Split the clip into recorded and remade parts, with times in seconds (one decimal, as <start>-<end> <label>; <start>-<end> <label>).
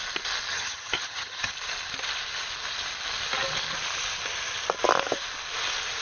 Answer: 0.0-0.5 recorded; 0.5-1.5 remade; 1.5-6.0 recorded